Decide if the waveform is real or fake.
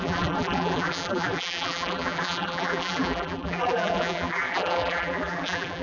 fake